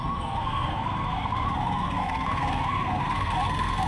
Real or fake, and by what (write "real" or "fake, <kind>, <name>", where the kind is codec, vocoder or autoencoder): fake, codec, SNAC